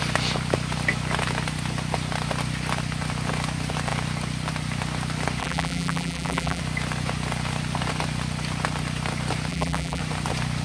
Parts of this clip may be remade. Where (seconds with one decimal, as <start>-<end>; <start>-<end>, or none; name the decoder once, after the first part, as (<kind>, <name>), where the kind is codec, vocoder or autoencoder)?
5.4-6.6 (vocoder, BigVGAN v2); 9.5-10.0